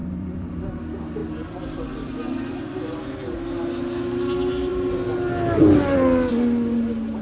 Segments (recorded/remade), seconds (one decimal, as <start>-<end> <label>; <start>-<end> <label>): 0.0-0.5 remade; 0.5-1.2 recorded; 1.2-2.7 remade; 2.7-7.2 recorded